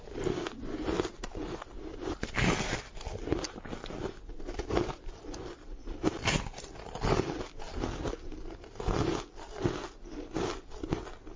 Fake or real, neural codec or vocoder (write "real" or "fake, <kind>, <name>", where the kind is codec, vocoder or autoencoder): real